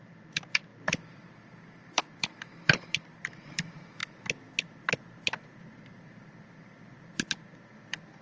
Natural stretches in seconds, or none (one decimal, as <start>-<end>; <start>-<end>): 4.0-4.8